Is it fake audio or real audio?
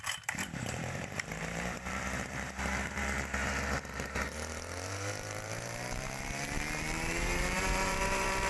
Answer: fake